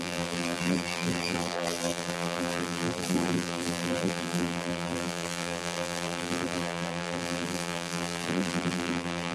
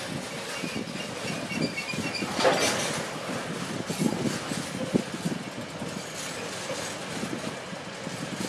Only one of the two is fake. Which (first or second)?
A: first